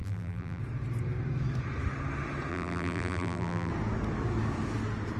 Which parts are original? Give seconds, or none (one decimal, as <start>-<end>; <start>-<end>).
0.6-2.5; 3.7-5.2